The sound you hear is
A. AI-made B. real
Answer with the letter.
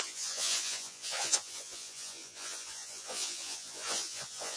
A